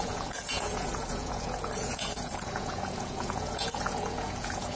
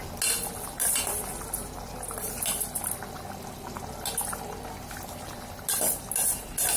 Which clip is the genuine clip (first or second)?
second